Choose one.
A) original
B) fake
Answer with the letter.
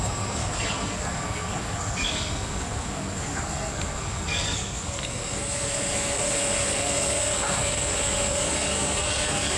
B